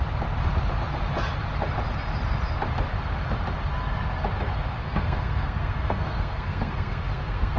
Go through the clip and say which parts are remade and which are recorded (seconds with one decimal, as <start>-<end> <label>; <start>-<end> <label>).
0.0-4.8 recorded; 4.8-7.6 remade